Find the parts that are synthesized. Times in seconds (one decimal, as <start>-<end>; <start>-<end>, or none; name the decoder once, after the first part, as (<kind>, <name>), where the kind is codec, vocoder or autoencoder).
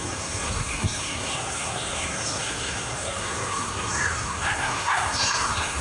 0.0-5.8 (codec, SNAC)